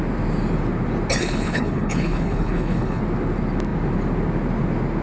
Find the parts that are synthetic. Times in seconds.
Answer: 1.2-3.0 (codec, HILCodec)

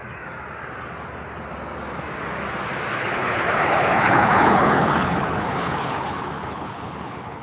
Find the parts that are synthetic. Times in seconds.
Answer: 2.9-7.4 (codec, HILCodec)

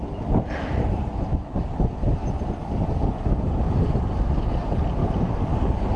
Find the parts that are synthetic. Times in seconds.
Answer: none

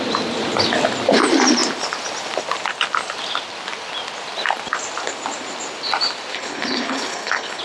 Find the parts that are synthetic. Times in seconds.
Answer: 6.3-7.6 (codec, HILCodec)

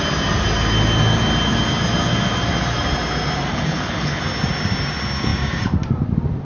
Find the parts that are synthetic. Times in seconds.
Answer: 3.5-4.2 (codec, HILCodec)